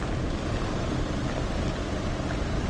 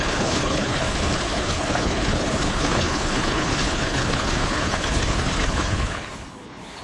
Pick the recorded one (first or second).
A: first